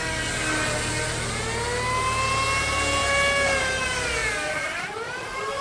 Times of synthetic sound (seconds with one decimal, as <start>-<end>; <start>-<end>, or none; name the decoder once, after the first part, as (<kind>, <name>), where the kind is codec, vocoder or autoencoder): none